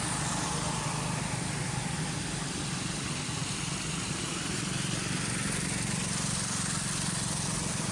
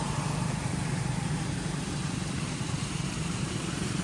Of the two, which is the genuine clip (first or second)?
first